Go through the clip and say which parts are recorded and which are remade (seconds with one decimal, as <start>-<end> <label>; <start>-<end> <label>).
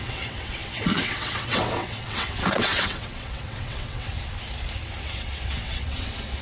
0.0-4.1 remade; 4.1-5.0 recorded; 5.0-6.4 remade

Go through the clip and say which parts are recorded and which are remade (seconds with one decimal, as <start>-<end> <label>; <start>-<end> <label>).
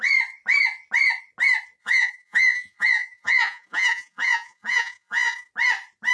0.0-1.8 recorded; 1.8-5.5 remade; 5.5-6.1 recorded